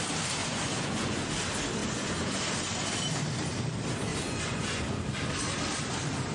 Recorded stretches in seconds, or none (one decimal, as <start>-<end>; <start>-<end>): 0.0-0.4; 1.3-1.8; 2.4-4.1; 5.0-6.3

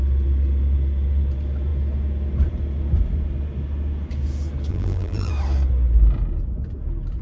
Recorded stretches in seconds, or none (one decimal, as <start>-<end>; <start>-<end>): 0.0-4.7; 5.3-7.2

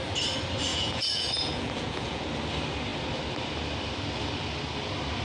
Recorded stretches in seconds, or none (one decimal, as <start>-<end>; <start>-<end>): 0.0-0.7; 2.3-5.2

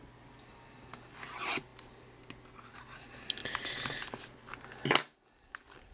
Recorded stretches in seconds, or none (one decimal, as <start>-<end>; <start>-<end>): 0.0-5.9

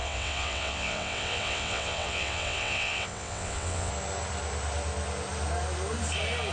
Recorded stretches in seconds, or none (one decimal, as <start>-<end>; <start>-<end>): 3.9-6.5